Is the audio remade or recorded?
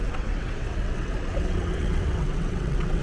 remade